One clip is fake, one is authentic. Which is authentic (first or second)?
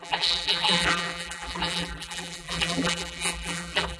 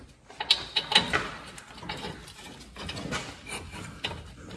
second